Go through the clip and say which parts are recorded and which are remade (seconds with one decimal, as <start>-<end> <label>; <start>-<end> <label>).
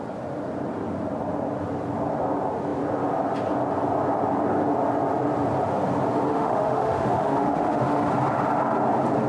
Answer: 0.0-6.3 recorded; 6.3-8.1 remade; 8.1-9.3 recorded